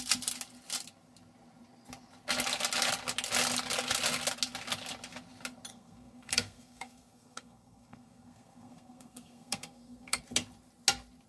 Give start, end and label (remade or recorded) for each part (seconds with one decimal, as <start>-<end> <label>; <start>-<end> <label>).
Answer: 0.0-5.7 recorded; 5.7-10.2 remade; 10.2-11.3 recorded